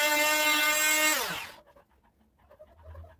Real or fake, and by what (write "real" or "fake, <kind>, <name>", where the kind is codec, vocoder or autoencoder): real